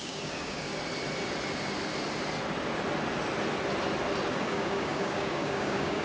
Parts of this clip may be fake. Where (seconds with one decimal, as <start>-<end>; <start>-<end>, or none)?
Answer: 0.0-0.7; 4.3-6.0